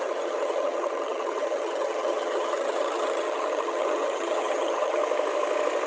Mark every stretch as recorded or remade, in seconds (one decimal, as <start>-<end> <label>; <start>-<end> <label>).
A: 0.0-5.0 remade; 5.0-5.9 recorded